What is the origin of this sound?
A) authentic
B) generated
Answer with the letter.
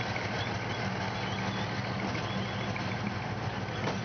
A